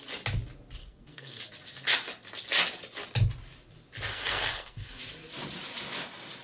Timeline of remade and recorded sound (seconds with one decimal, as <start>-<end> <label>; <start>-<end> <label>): 0.0-0.8 recorded; 0.8-1.4 remade; 1.4-4.1 recorded; 4.1-5.0 remade; 5.0-6.4 recorded